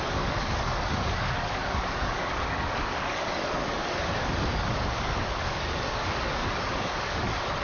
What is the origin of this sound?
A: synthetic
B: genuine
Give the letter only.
A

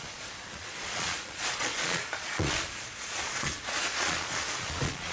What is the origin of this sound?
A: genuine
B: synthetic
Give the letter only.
B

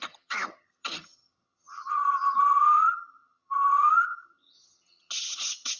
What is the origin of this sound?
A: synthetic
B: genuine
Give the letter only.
A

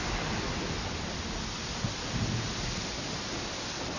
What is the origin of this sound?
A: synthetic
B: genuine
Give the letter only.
B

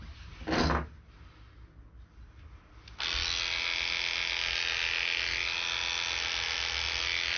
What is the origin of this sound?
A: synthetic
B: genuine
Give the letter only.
B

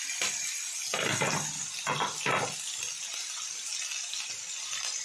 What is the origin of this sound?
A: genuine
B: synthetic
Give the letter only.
A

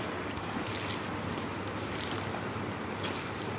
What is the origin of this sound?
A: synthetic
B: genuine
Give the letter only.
A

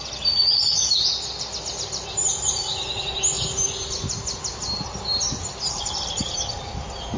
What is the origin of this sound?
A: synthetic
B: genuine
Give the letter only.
B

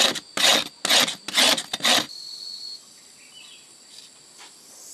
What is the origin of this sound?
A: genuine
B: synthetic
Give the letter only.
A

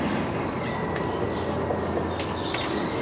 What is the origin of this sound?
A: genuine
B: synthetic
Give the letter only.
A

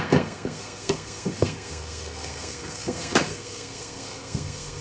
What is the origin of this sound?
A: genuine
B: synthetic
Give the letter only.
B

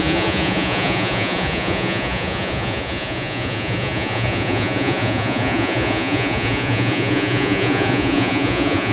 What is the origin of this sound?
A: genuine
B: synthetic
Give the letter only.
B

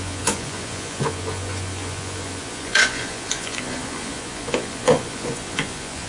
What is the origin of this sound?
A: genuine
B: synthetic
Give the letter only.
B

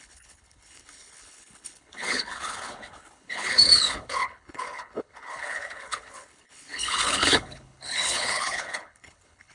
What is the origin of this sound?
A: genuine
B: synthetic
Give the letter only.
B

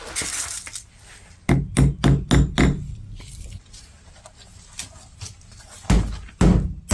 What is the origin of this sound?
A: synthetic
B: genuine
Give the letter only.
B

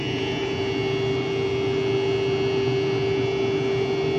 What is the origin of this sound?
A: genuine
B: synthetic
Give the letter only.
A